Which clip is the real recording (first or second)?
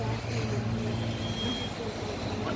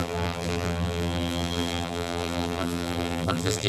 first